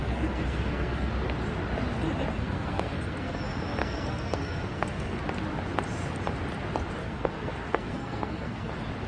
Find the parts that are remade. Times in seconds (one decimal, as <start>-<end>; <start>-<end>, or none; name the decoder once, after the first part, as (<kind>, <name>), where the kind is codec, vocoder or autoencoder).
0.0-1.1 (codec, SNAC); 2.3-3.4; 3.8-5.2; 7.0-8.7